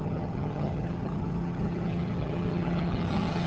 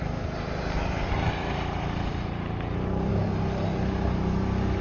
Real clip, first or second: second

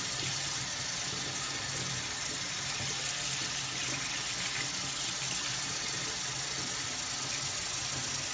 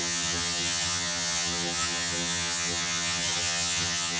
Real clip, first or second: first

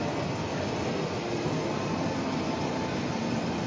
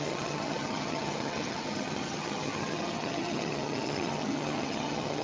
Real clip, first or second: first